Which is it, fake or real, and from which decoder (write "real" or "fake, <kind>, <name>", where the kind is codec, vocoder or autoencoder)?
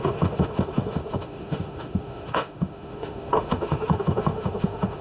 fake, autoencoder, DAC-VAE